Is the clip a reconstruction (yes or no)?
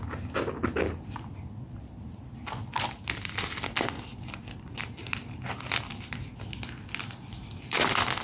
no